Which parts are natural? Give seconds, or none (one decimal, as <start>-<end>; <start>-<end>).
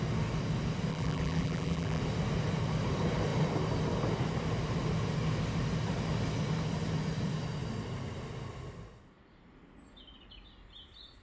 0.0-0.9; 2.0-11.2